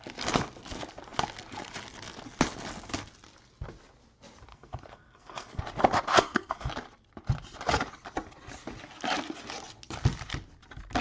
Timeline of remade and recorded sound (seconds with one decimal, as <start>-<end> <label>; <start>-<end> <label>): 0.0-4.5 recorded; 4.5-5.6 remade; 5.6-6.1 recorded; 6.1-6.7 remade; 6.7-11.0 recorded